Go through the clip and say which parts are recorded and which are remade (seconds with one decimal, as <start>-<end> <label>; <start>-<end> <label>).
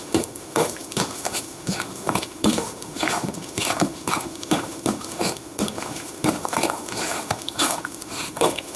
0.0-8.8 remade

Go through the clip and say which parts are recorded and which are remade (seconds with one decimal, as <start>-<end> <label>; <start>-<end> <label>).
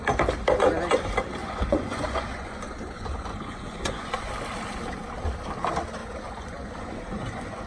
0.0-1.4 recorded; 1.4-4.3 remade; 4.3-6.0 recorded; 6.0-7.7 remade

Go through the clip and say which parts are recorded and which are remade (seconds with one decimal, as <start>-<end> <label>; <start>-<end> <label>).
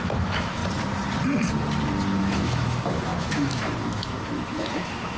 0.0-0.6 remade; 0.6-2.2 recorded; 2.2-5.2 remade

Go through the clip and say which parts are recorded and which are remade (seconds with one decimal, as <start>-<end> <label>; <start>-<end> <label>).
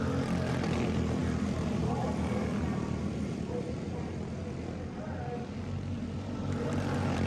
0.0-7.3 recorded